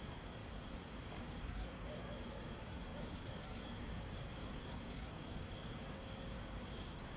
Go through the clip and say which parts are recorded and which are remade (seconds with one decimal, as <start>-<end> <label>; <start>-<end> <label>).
0.0-0.4 remade; 0.4-1.2 recorded; 1.2-7.2 remade